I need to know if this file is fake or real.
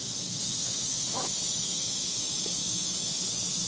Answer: fake